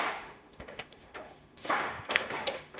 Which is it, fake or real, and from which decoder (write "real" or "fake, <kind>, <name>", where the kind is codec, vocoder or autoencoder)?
fake, autoencoder, DAC-VAE